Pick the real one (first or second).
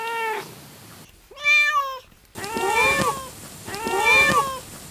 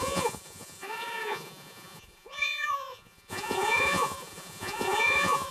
first